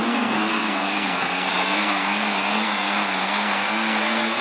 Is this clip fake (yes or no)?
yes